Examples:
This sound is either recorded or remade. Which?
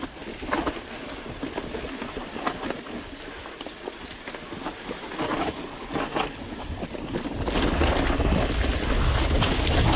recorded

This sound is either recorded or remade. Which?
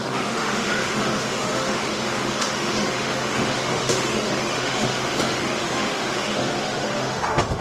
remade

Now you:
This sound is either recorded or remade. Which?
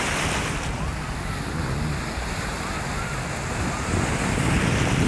recorded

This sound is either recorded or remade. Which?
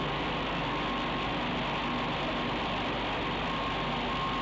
recorded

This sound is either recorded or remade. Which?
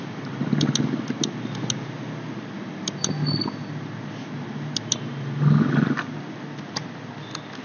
recorded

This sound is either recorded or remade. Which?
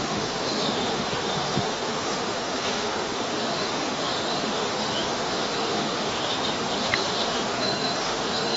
remade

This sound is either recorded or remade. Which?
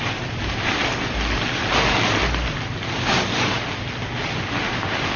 recorded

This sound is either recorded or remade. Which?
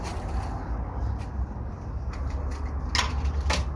recorded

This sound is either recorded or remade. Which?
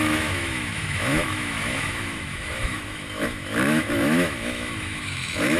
remade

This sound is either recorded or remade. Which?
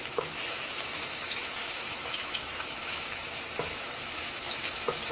remade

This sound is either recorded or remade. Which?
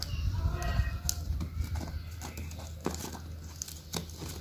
recorded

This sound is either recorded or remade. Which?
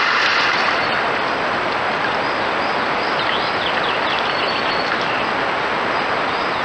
recorded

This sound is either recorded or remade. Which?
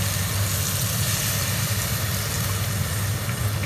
recorded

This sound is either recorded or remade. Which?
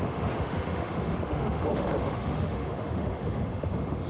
remade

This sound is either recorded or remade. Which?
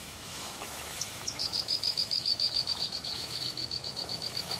remade